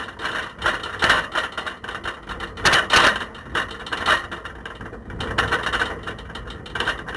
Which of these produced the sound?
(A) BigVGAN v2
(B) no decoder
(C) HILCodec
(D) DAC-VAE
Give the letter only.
B